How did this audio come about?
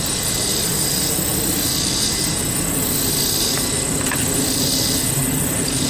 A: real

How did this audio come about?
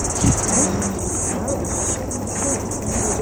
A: real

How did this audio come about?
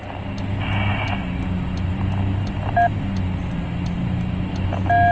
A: real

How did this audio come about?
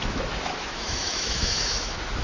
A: fake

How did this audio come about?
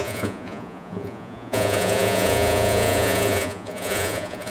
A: fake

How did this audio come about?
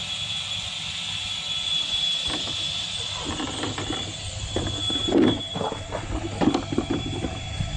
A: fake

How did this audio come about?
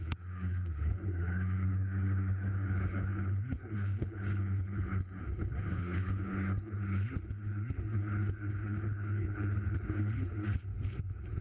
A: fake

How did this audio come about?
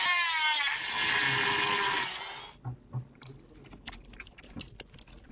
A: real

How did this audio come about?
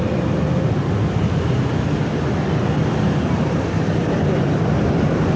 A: real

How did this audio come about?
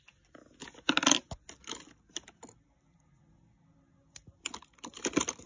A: real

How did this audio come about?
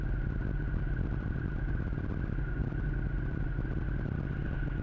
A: real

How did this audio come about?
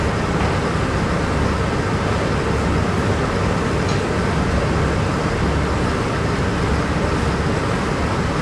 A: real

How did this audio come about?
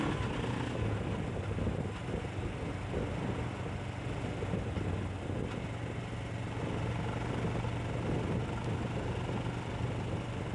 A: real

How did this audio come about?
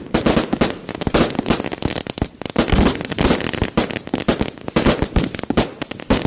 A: real